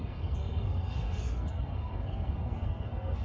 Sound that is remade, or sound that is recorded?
remade